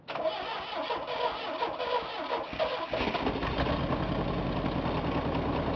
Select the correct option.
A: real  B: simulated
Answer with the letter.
A